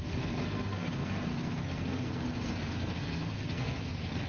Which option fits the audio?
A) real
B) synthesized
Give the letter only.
B